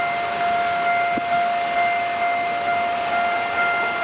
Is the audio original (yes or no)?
yes